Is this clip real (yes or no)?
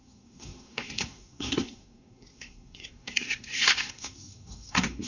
no